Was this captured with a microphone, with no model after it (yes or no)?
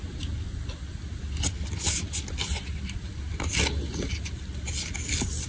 yes